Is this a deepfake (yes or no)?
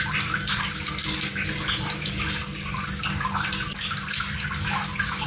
no